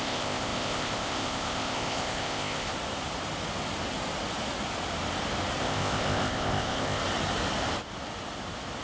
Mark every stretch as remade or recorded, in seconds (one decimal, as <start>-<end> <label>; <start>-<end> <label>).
0.0-2.7 remade; 2.7-5.6 recorded; 5.6-7.0 remade; 7.0-8.8 recorded